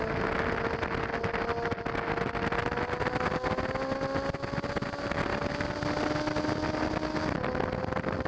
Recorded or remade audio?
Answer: recorded